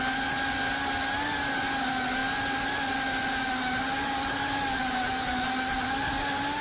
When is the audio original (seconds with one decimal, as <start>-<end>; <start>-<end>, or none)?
0.0-6.6